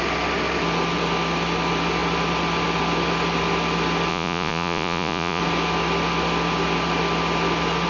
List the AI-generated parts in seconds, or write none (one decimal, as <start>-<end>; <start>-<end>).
4.1-5.4